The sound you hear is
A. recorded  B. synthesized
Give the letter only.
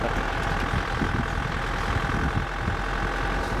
A